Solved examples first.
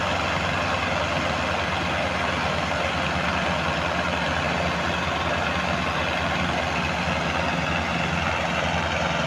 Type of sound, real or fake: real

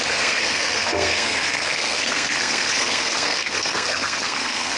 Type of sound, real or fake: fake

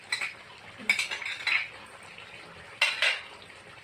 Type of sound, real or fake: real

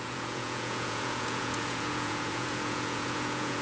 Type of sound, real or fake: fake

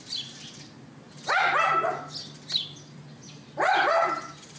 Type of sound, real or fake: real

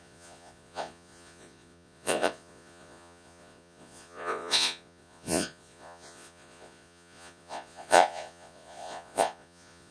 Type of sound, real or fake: fake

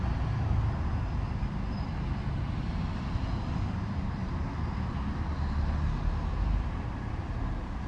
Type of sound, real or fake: real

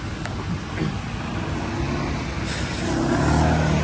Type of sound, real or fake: real